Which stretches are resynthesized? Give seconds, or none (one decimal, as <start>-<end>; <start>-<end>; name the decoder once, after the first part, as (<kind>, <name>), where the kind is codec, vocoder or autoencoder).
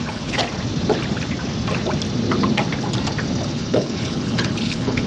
0.0-0.4 (codec, HILCodec); 3.5-5.1